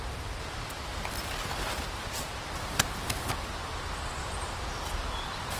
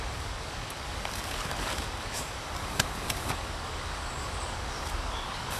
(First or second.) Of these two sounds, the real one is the first